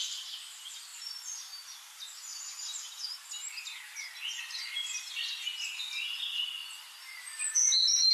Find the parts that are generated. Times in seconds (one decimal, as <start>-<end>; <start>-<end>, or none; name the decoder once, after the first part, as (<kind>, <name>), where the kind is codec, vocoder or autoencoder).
none